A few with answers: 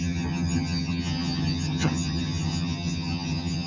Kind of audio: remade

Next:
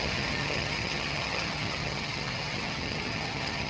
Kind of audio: remade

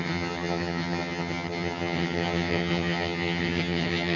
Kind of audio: remade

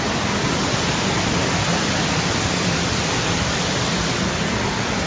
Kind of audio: recorded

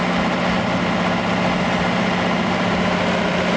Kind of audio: recorded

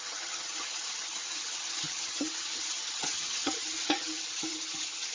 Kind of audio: remade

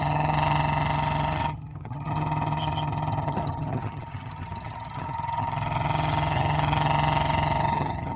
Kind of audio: remade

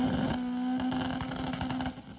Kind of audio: recorded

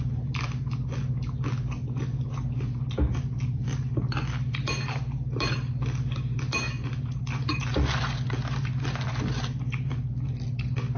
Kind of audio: recorded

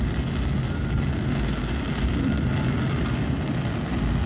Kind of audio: recorded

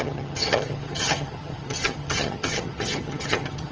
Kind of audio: remade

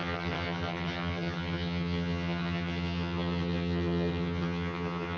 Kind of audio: remade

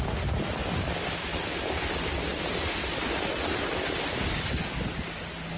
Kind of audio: recorded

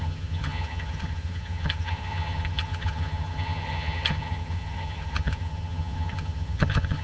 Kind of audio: remade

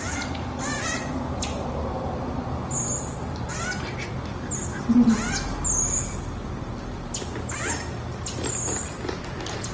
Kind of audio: recorded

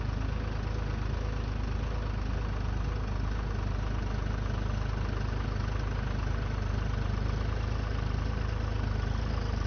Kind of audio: recorded